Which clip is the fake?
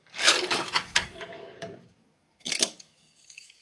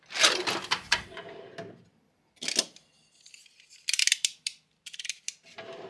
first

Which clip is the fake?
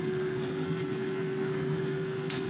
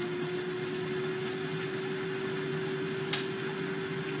first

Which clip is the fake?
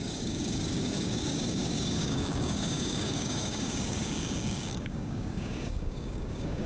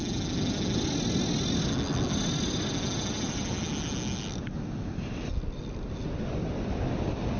first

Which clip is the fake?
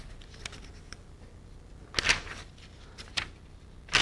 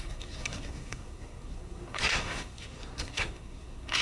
second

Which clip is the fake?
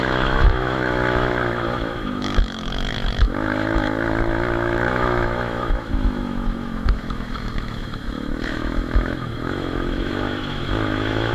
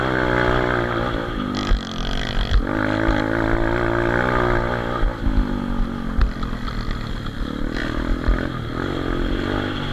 first